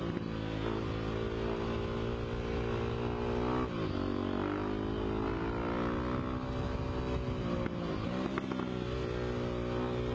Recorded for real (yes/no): yes